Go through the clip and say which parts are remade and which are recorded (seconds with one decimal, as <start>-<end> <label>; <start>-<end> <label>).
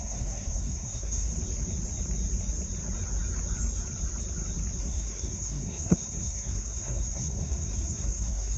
0.0-1.3 remade; 1.3-4.8 recorded; 4.8-8.6 remade